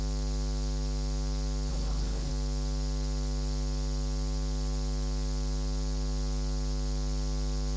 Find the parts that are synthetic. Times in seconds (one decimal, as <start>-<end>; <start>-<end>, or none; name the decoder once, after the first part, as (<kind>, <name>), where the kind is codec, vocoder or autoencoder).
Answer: 1.7-2.3 (codec, HILCodec)